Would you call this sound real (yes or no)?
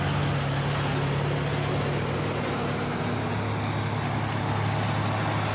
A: yes